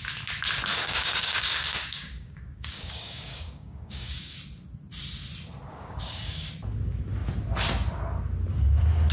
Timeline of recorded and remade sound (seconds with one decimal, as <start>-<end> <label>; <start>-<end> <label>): 0.0-0.7 recorded; 0.7-4.4 remade; 4.4-5.7 recorded; 5.7-6.5 remade; 6.5-9.1 recorded